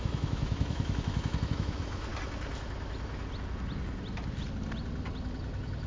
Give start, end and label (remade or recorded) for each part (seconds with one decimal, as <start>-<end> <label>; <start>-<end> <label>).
0.0-2.1 remade; 2.1-5.9 recorded

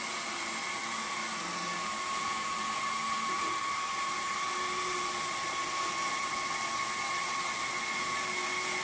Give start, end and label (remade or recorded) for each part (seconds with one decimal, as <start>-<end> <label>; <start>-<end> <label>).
0.0-8.8 recorded

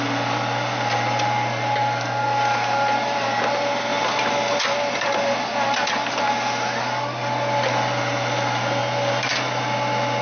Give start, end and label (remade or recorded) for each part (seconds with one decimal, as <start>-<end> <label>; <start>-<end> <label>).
0.0-10.2 recorded

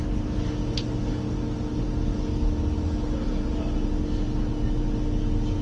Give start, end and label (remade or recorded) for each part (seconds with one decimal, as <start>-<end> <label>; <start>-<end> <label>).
0.0-5.6 recorded

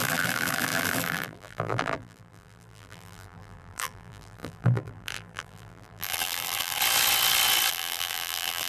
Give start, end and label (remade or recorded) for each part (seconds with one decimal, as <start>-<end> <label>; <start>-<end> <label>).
0.0-6.8 remade; 6.8-7.7 recorded; 7.7-8.7 remade

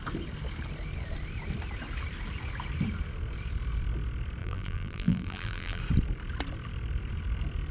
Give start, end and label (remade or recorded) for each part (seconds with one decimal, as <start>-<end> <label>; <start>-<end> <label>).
0.0-4.4 recorded; 4.4-5.8 remade; 5.8-7.7 recorded